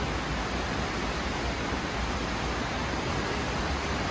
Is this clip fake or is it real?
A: real